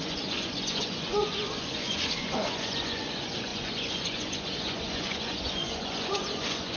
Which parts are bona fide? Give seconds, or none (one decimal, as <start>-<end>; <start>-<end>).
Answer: none